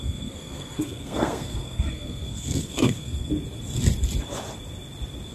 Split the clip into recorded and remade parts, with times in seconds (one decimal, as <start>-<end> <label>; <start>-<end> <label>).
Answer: 0.0-3.3 remade; 3.3-5.3 recorded

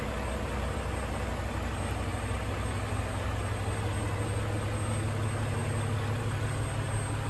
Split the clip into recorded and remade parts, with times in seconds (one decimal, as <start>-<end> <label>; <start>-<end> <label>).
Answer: 0.0-7.3 recorded

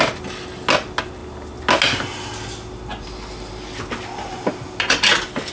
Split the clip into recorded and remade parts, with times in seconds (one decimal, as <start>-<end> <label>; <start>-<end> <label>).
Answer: 0.0-5.5 recorded

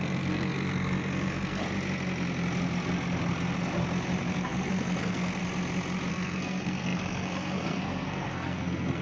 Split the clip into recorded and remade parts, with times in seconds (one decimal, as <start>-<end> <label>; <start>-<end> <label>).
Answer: 0.0-1.6 remade; 1.6-4.3 recorded; 4.3-5.4 remade; 5.4-6.1 recorded; 6.1-9.0 remade